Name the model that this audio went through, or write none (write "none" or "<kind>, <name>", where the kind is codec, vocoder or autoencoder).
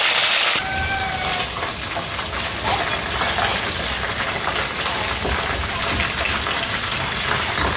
none